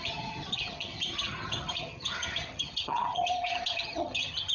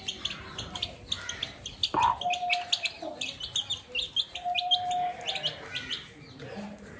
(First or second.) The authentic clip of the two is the second